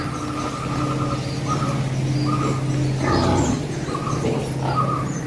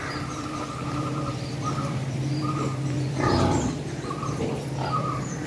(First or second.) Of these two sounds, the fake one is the second